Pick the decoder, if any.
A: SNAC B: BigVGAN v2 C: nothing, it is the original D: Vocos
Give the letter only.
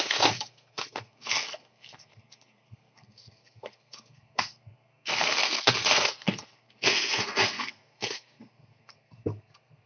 A